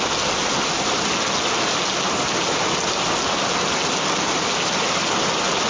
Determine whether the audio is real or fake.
real